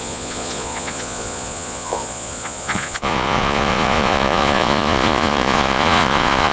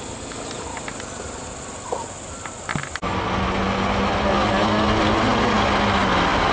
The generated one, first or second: first